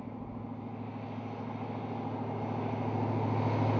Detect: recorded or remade recorded